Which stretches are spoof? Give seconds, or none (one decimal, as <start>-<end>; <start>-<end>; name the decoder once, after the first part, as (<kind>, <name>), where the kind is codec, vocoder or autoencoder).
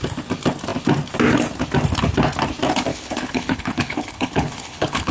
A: 2.9-5.1 (codec, HILCodec)